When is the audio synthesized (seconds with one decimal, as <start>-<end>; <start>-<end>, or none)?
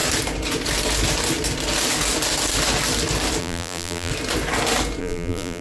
3.4-4.1; 5.0-5.6